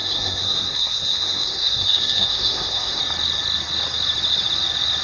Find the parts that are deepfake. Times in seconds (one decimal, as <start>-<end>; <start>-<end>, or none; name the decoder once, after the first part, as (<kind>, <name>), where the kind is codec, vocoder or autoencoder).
0.0-3.0 (codec, SNAC)